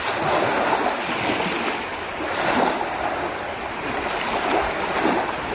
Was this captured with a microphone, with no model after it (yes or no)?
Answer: yes